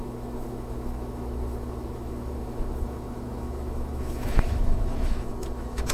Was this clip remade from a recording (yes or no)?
yes